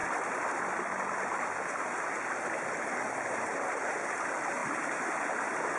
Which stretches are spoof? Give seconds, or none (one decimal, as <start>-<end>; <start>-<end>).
none